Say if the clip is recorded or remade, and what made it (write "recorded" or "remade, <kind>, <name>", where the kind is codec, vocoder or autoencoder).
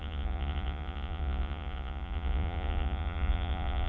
remade, vocoder, Vocos